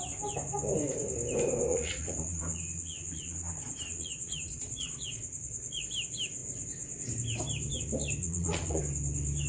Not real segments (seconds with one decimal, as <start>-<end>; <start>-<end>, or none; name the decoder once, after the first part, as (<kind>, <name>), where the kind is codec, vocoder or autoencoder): 1.7-5.8 (vocoder, Vocos); 8.2-8.8